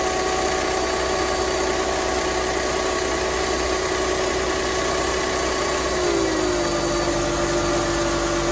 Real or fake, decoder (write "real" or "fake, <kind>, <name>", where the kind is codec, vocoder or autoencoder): real